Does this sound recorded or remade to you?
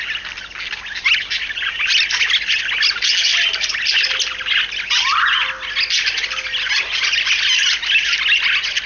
recorded